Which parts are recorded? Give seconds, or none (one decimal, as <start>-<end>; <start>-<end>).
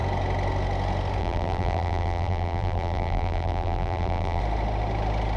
0.0-1.2; 4.4-5.4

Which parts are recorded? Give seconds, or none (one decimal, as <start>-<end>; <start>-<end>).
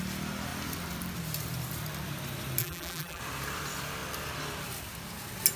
0.0-2.6; 3.2-5.6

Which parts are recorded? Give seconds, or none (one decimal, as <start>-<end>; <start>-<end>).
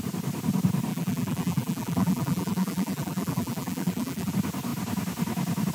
0.0-0.9; 4.3-5.7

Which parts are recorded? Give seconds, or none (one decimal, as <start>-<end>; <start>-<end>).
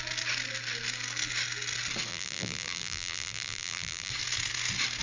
0.0-2.1; 4.1-5.0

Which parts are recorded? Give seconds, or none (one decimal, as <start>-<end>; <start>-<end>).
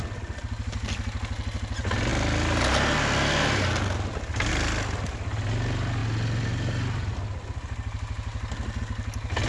0.0-9.5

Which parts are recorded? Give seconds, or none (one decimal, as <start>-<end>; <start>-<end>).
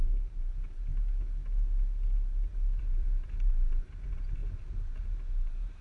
0.9-2.8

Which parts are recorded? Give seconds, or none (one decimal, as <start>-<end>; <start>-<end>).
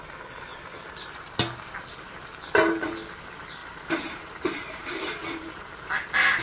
0.0-3.6; 5.7-6.4